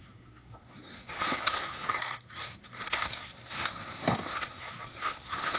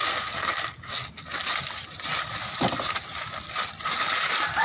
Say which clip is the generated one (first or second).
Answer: first